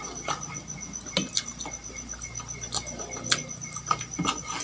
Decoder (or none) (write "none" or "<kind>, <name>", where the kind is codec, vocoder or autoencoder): none